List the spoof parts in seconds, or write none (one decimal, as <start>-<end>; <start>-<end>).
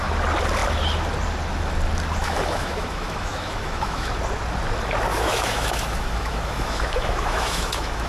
2.2-4.1; 5.1-8.1